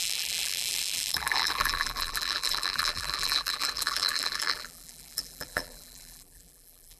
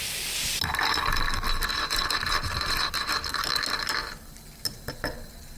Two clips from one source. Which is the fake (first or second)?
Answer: first